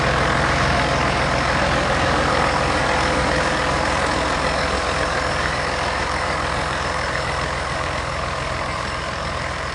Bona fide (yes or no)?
no